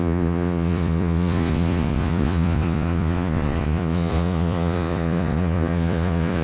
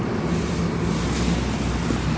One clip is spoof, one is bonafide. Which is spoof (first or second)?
first